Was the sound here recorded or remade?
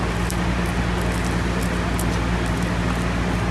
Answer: recorded